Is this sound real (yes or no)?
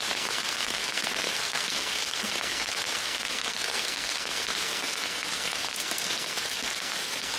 no